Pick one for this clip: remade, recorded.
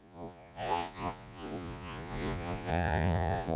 remade